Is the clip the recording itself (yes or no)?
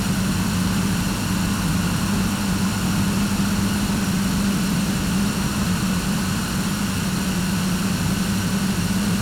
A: yes